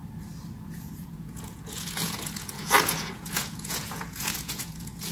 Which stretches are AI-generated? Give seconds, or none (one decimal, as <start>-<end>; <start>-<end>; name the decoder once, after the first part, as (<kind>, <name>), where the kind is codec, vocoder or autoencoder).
0.5-5.1 (vocoder, Vocos)